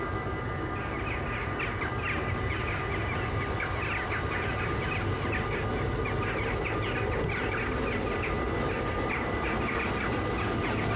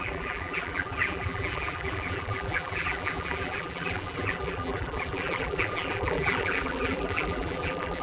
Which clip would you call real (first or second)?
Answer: first